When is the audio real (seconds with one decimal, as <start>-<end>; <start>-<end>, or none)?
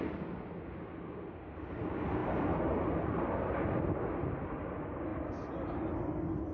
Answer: 0.0-6.5